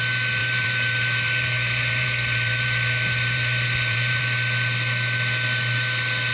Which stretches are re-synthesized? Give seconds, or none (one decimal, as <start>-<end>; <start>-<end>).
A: 0.4-4.2